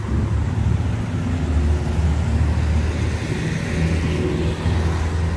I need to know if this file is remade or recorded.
recorded